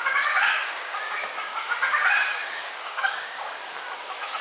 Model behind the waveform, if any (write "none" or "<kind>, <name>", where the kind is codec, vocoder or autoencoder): codec, DAC